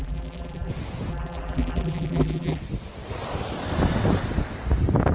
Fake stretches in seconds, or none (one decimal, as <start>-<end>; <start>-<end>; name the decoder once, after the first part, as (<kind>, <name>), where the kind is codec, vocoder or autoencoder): 0.0-0.7 (vocoder, BigVGAN v2); 1.1-2.6